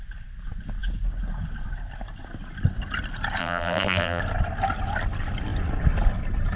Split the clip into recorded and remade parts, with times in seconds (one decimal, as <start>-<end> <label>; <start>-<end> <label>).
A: 0.0-3.4 recorded; 3.4-4.2 remade; 4.2-6.6 recorded